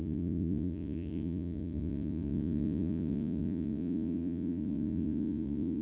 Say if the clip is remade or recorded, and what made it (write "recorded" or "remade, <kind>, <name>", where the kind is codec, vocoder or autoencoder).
remade, vocoder, Vocos